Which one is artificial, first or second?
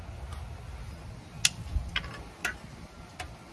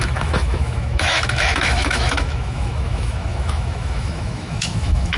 second